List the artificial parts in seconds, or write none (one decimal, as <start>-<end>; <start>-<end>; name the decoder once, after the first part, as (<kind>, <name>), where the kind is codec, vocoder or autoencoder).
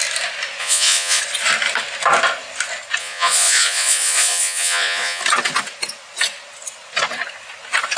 0.6-1.2 (vocoder, Vocos); 3.0-5.2